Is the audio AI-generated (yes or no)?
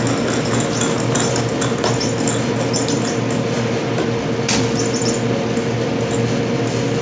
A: no